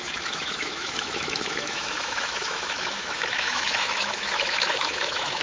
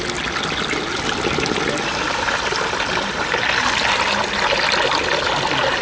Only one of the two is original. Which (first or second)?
second